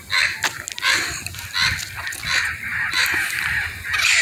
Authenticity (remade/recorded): recorded